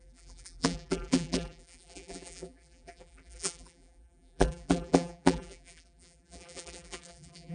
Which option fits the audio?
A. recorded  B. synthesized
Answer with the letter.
B